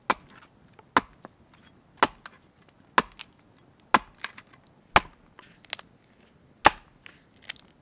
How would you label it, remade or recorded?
recorded